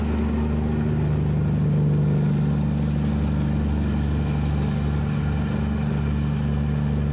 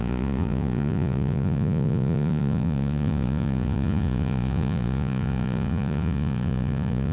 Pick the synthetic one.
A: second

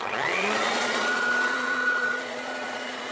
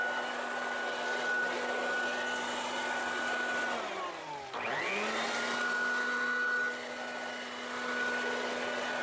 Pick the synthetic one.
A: first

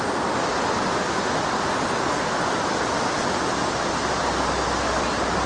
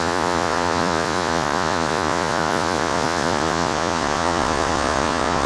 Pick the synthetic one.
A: second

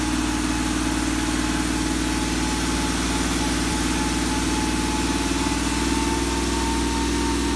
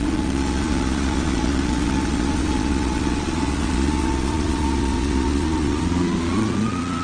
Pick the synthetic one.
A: second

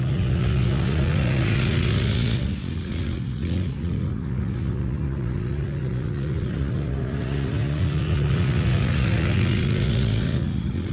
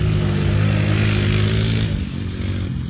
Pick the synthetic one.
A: first